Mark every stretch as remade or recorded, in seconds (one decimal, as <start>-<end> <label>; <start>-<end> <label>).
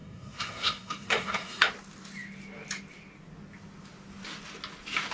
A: 0.0-1.7 remade; 1.7-5.1 recorded